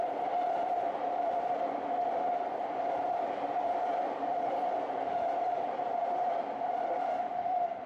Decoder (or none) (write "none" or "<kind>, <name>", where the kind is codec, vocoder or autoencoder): vocoder, BigVGAN v2